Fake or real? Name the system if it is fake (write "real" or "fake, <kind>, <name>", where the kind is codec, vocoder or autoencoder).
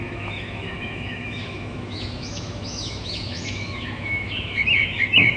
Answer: fake, autoencoder, DAC-VAE